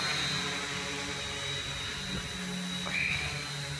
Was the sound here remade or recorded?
recorded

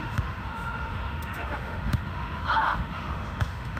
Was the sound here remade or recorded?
remade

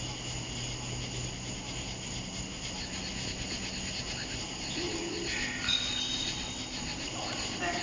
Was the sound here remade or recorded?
recorded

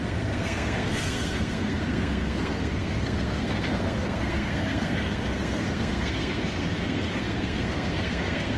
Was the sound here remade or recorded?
remade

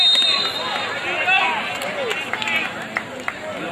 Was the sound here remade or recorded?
recorded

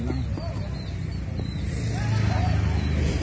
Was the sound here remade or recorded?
recorded